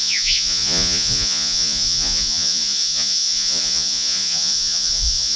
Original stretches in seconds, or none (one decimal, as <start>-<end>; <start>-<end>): none